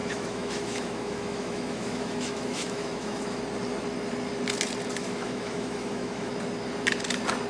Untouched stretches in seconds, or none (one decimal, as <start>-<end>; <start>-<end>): 3.4-5.0; 6.3-7.5